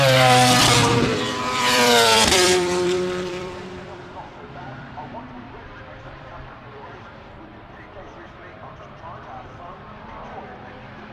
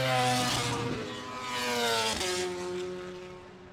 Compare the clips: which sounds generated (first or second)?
first